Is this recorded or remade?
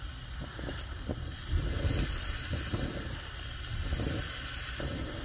recorded